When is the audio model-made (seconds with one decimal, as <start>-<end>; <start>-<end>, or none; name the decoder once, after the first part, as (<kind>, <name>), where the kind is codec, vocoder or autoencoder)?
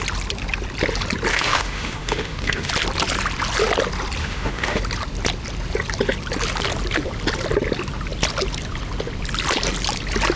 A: 1.3-2.7 (autoencoder, DAC-VAE); 4.2-4.8